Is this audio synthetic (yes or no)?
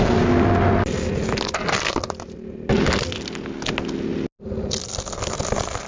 no